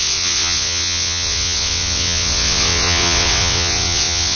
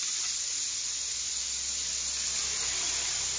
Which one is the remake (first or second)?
first